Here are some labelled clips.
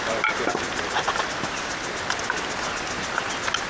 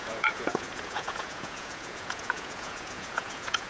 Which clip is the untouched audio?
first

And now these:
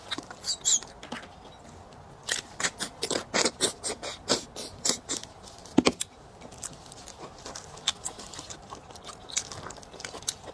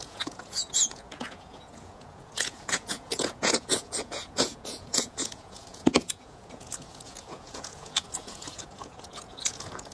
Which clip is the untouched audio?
first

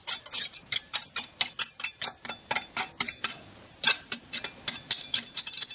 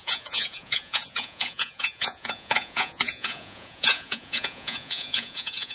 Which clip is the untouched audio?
first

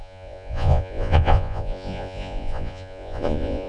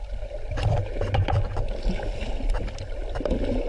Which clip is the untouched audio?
second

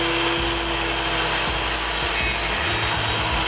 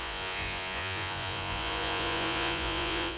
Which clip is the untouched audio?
first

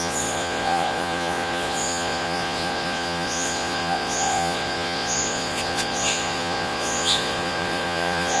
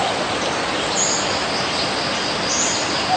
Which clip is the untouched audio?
second